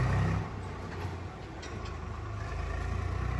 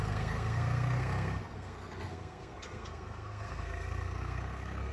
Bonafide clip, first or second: first